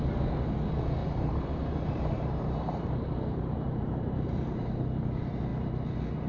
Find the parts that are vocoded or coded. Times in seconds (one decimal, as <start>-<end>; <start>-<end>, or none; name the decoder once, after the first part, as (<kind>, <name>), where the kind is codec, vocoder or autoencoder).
1.0-4.8 (vocoder, BigVGAN v2)